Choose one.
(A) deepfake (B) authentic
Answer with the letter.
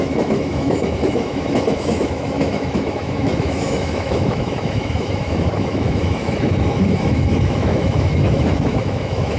A